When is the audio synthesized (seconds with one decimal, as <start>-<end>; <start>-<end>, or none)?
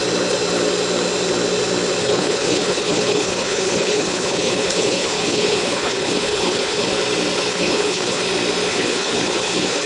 2.0-6.9; 7.5-8.2; 8.7-9.9